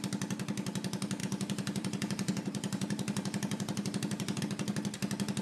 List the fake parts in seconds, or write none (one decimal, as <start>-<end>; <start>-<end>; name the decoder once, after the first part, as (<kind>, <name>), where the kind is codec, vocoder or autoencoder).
1.2-4.4 (vocoder, BigVGAN v2)